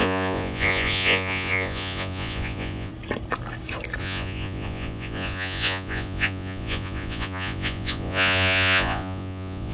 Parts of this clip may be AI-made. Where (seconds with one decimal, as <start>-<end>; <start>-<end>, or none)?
0.0-2.9; 4.0-9.7